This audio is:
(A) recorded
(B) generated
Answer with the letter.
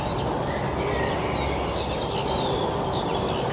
A